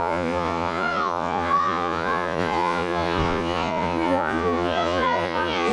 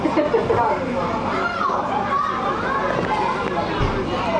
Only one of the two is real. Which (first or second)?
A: second